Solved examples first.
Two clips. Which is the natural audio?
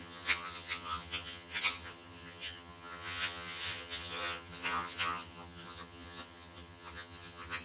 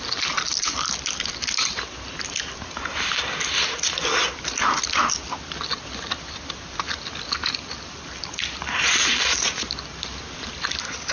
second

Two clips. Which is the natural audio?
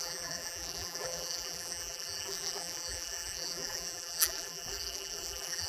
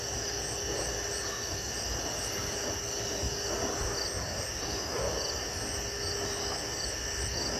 second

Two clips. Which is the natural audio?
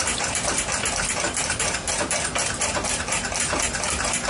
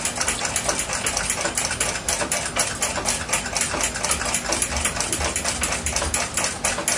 second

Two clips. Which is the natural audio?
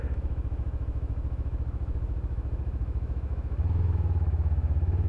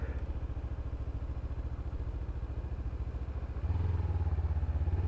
second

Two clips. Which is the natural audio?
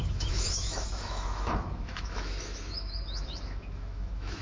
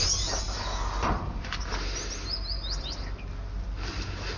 second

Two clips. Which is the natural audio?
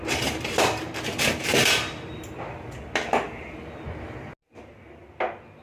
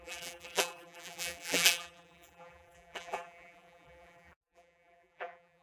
first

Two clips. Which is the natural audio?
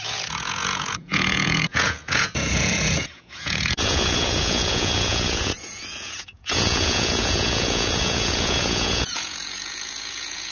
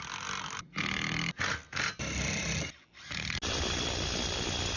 second